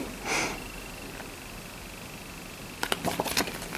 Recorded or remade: recorded